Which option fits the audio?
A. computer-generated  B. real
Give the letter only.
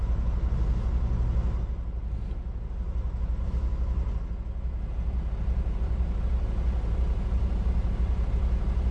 B